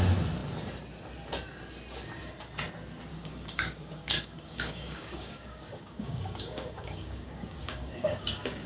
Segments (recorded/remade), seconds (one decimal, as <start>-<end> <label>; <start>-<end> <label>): 0.0-3.1 recorded; 3.1-8.7 remade